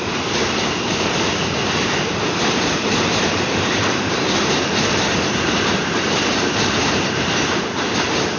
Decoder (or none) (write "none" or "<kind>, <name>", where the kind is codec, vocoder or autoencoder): vocoder, BigVGAN v2